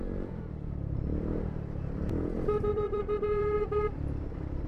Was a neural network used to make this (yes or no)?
yes